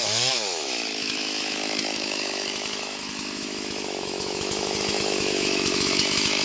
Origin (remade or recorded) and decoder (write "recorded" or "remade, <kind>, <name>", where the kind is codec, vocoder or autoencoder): remade, autoencoder, DAC-VAE